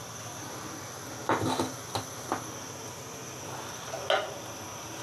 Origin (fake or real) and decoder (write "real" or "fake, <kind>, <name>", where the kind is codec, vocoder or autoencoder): real